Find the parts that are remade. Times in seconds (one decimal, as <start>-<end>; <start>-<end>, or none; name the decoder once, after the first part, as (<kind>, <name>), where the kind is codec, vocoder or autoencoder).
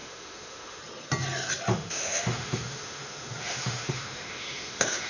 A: 0.0-0.8 (autoencoder, DAC-VAE); 1.7-5.1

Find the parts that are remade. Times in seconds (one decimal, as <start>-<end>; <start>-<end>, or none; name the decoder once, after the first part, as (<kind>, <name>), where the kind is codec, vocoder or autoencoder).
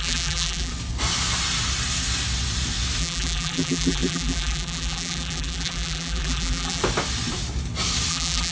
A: 0.0-0.7 (vocoder, BigVGAN v2); 3.0-6.8; 8.1-8.5